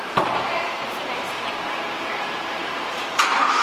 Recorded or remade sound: remade